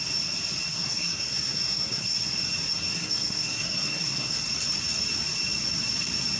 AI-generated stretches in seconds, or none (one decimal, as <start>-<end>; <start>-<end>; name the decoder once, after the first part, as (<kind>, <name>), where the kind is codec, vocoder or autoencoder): 0.7-2.3 (codec, SNAC); 2.7-4.4